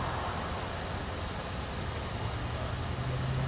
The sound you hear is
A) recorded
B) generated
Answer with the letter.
A